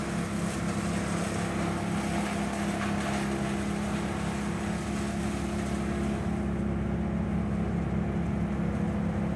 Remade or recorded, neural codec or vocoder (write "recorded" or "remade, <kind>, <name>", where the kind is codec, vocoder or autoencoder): recorded